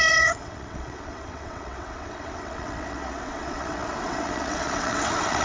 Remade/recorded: remade